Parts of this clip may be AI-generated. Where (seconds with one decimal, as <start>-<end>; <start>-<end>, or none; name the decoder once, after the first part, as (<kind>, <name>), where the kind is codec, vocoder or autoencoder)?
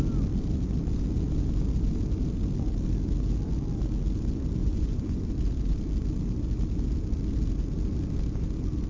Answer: 4.6-5.2 (vocoder, Vocos)